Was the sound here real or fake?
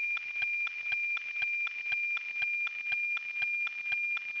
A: real